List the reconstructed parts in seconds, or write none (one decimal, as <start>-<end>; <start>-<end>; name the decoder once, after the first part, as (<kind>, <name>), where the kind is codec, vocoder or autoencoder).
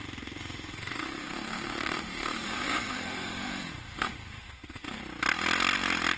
0.0-5.0 (autoencoder, DAC-VAE)